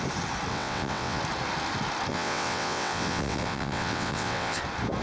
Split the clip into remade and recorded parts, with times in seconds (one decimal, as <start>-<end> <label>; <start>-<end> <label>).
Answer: 0.0-0.5 recorded; 0.5-1.2 remade; 1.2-2.1 recorded; 2.1-4.6 remade; 4.6-5.0 recorded